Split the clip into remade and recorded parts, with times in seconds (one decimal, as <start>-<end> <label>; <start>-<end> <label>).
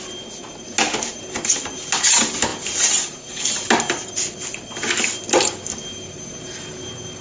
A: 0.0-7.2 recorded